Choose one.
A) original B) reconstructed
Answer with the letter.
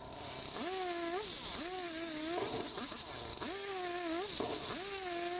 A